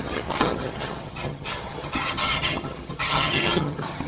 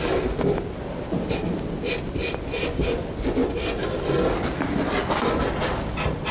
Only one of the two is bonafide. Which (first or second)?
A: second